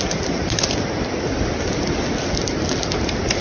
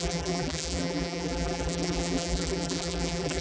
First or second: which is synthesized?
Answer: second